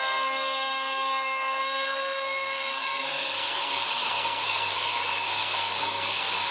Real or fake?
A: fake